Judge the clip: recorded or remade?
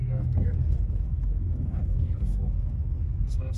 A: remade